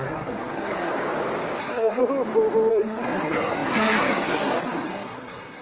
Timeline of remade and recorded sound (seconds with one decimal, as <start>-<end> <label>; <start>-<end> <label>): 0.0-0.9 remade; 0.9-1.6 recorded; 1.6-2.0 remade; 2.0-2.7 recorded; 2.7-5.6 remade